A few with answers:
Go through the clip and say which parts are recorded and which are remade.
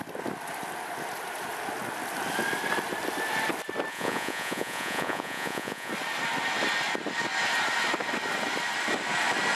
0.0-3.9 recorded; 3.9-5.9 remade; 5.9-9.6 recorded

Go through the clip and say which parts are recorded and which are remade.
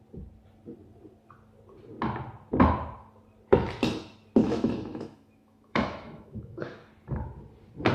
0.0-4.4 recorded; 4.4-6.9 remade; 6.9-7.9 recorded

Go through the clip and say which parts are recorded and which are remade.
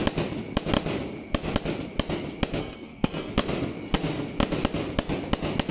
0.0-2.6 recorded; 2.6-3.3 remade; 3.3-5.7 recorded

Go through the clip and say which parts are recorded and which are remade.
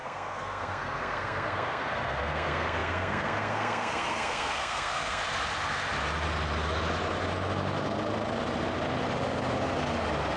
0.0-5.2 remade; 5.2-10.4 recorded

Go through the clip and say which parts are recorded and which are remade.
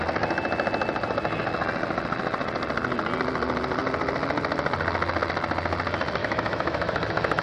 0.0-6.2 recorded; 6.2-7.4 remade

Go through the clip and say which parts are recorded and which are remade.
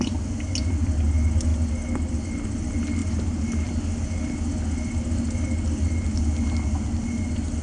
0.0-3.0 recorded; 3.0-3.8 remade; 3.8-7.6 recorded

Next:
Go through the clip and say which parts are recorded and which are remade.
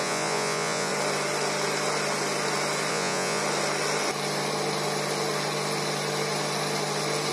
0.0-0.9 remade; 0.9-2.9 recorded; 2.9-3.4 remade; 3.4-7.3 recorded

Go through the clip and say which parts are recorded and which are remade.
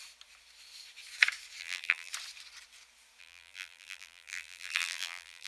0.0-1.6 recorded; 1.6-2.1 remade; 2.1-3.2 recorded; 3.2-5.5 remade